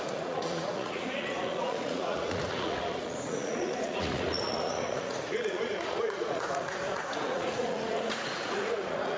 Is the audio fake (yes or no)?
yes